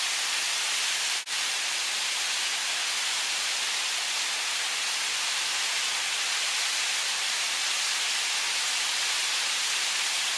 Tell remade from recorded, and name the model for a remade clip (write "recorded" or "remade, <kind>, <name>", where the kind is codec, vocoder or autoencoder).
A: recorded